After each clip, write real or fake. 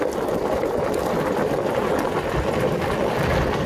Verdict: real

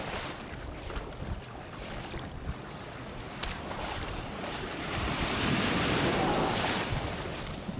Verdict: fake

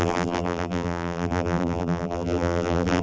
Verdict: fake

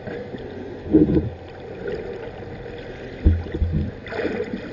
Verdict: real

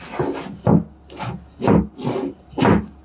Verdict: real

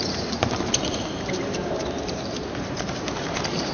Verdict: fake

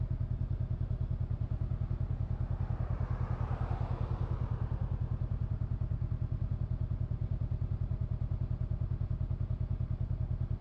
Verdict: real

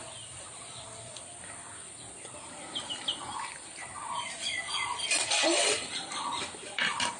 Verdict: fake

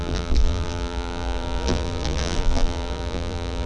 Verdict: fake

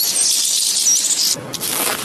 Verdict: real